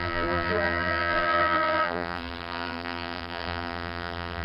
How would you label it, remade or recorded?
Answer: remade